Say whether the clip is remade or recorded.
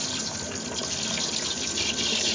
recorded